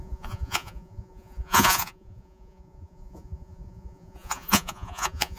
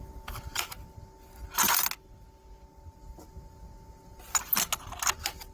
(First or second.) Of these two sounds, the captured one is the second